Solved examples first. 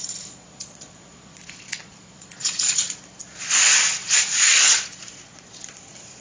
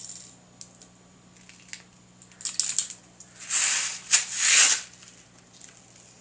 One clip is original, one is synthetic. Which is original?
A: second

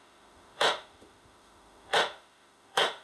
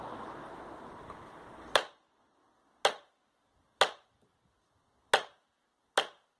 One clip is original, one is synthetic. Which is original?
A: second